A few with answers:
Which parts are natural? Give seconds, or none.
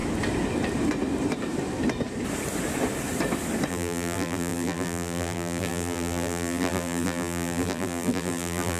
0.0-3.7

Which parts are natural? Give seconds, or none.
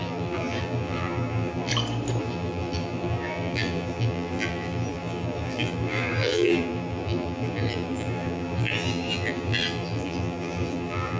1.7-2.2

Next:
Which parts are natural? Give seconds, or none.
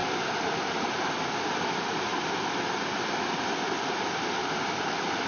2.1-3.2; 4.4-5.3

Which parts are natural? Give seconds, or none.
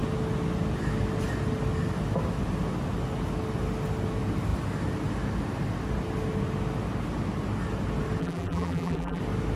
0.0-8.2; 9.2-9.6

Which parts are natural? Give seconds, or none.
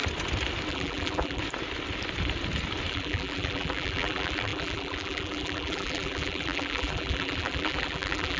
0.0-0.7; 1.4-2.9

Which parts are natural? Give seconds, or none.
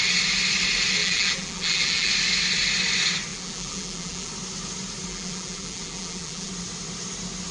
0.0-1.0; 2.1-3.3; 4.3-5.1; 6.5-7.5